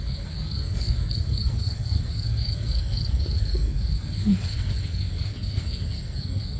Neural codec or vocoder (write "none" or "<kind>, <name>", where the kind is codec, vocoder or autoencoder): codec, SNAC